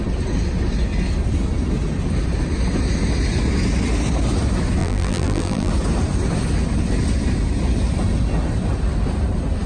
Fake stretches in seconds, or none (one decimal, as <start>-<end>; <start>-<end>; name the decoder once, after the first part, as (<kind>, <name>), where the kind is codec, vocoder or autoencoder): 4.8-5.7 (vocoder, BigVGAN v2)